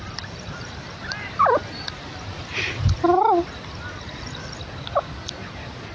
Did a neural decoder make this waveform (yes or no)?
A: yes